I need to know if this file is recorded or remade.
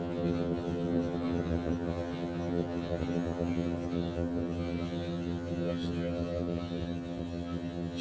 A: remade